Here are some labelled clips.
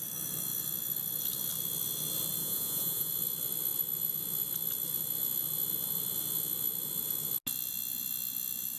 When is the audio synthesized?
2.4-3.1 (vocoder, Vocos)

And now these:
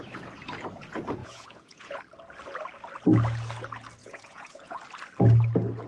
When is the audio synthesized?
1.2-2.0 (vocoder, Vocos); 4.0-4.8